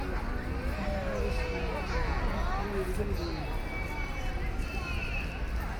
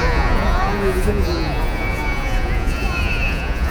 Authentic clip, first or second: first